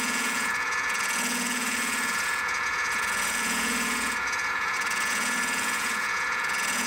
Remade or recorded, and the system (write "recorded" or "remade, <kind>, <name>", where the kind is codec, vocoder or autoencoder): remade, vocoder, Vocos